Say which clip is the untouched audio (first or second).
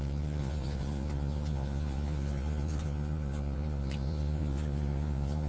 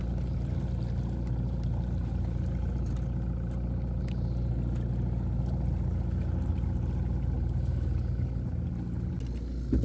second